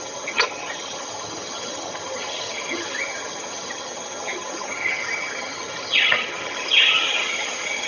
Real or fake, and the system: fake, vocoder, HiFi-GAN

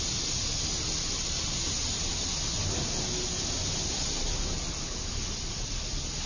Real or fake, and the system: real